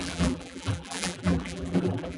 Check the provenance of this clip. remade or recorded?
remade